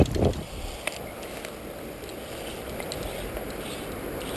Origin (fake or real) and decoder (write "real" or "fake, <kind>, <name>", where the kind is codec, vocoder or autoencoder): real